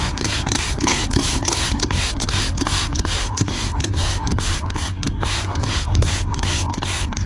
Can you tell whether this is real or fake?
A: fake